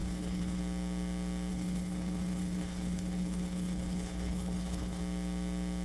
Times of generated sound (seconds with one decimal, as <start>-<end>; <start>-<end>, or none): 0.0-0.6; 1.5-5.0